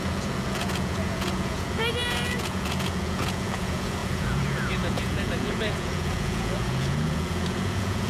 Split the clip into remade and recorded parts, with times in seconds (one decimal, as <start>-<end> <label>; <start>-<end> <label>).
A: 0.0-8.1 remade